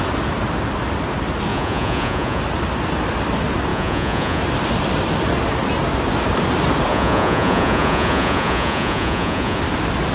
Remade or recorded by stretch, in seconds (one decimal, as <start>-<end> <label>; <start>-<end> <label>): 0.0-1.5 recorded; 1.5-2.4 remade; 2.4-3.7 recorded; 3.7-4.4 remade; 4.4-6.9 recorded; 6.9-9.6 remade; 9.6-10.1 recorded